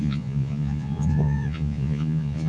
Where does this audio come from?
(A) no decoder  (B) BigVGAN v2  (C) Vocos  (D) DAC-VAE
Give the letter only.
C